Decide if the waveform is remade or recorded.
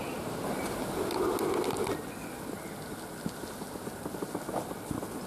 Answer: recorded